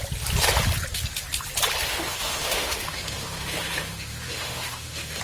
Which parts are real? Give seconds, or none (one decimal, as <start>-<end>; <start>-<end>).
0.0-1.9